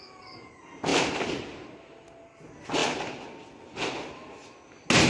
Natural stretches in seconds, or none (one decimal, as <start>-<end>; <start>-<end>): 0.0-5.1